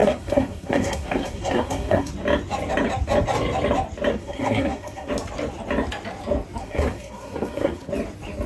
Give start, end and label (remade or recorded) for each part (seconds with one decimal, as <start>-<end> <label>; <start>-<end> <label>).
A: 0.0-2.1 remade; 2.1-4.1 recorded; 4.1-5.1 remade; 5.1-6.6 recorded; 6.6-7.9 remade; 7.9-8.5 recorded